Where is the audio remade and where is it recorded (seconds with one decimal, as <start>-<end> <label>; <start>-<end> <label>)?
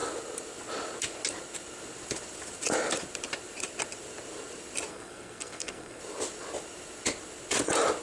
0.0-4.9 recorded; 4.9-6.0 remade; 6.0-8.0 recorded